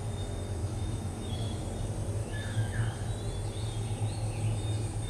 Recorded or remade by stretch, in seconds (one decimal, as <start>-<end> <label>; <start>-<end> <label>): 0.0-0.6 recorded; 0.6-1.6 remade; 1.6-2.2 recorded; 2.2-2.8 remade; 2.8-5.1 recorded

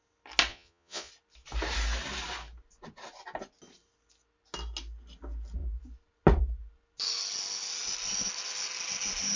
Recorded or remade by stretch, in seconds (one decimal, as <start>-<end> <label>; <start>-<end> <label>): 0.0-0.5 recorded; 0.5-1.1 remade; 1.1-9.4 recorded

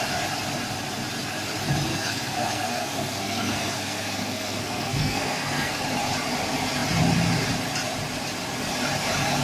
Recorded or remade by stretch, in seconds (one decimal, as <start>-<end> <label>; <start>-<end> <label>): 0.0-1.9 recorded; 1.9-5.8 remade; 5.8-9.4 recorded

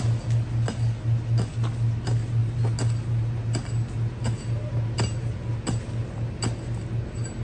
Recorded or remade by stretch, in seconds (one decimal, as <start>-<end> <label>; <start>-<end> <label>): 0.0-7.4 recorded

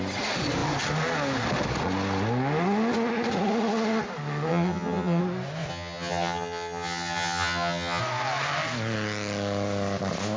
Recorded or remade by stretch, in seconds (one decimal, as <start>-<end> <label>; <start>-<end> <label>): 0.0-4.5 recorded; 4.5-5.2 remade; 5.2-5.7 recorded; 5.7-8.0 remade; 8.0-10.4 recorded

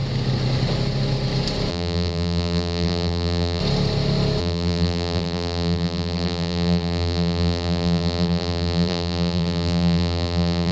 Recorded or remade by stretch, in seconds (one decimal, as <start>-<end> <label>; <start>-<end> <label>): 0.0-1.7 recorded; 1.7-3.6 remade; 3.6-4.4 recorded; 4.4-10.7 remade

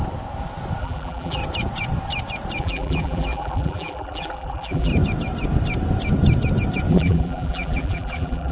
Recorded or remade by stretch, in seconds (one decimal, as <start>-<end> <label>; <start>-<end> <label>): 0.0-0.8 recorded; 0.8-1.4 remade; 1.4-2.6 recorded; 2.6-4.9 remade; 4.9-6.9 recorded; 6.9-8.5 remade

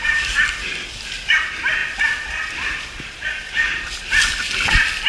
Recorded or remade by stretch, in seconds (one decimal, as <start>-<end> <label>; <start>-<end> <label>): 0.0-1.8 recorded; 1.8-5.1 remade